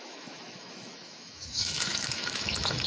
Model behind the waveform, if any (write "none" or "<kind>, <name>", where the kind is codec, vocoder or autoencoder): autoencoder, DAC-VAE